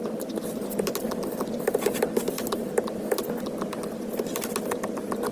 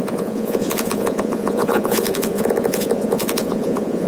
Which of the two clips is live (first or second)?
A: first